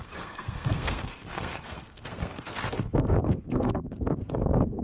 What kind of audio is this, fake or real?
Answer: fake